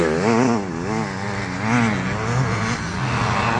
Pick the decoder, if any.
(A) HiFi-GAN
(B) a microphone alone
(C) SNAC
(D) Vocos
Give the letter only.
B